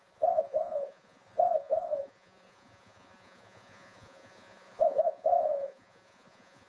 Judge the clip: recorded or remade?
remade